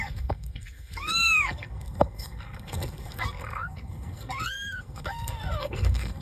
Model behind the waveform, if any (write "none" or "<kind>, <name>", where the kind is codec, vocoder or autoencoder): codec, SNAC